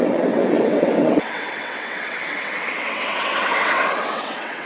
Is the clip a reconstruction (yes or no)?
yes